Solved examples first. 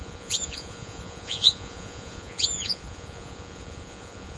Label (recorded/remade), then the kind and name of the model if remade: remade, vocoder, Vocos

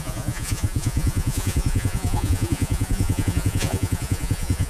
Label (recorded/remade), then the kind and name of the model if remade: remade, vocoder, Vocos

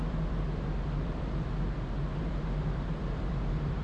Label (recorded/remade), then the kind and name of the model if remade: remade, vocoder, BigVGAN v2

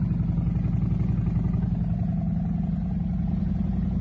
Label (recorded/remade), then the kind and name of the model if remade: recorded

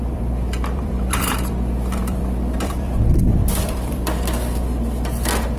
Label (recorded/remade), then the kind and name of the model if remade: remade, vocoder, BigVGAN v2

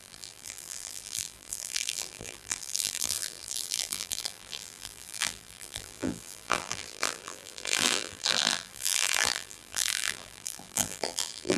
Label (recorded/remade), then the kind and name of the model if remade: remade, vocoder, BigVGAN v2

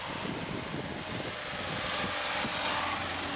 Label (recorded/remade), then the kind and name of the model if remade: recorded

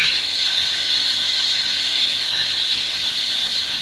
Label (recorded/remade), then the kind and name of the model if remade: remade, codec, SNAC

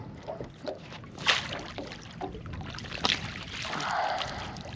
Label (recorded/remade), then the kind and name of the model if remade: recorded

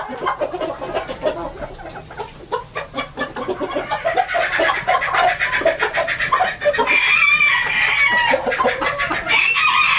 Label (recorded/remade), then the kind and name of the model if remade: recorded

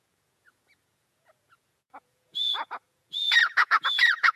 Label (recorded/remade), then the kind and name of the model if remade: remade, vocoder, Vocos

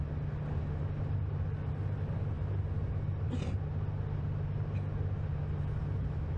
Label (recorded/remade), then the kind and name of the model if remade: recorded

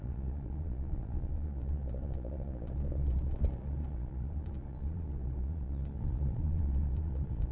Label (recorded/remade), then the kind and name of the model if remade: remade, vocoder, Vocos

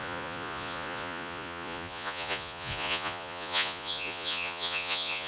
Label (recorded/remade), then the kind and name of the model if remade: remade, vocoder, Vocos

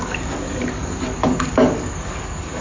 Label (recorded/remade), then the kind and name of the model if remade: remade, codec, DAC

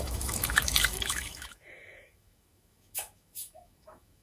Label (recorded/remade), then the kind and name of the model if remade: remade, autoencoder, DAC-VAE